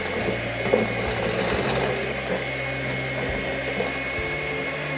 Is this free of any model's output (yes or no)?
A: yes